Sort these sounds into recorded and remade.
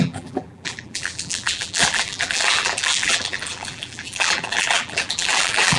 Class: remade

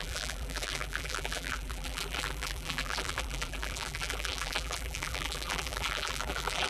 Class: remade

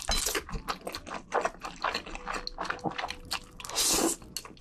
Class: recorded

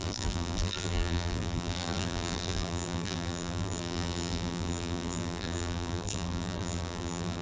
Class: remade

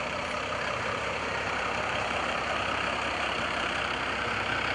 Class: remade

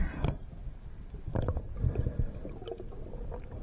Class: recorded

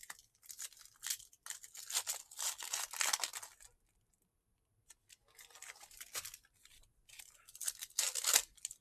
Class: recorded